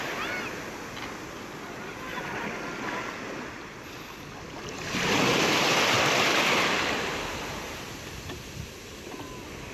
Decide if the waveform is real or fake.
real